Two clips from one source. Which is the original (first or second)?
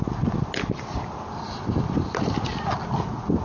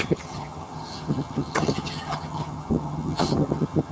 first